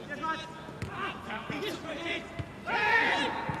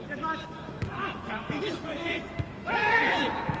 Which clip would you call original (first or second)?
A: first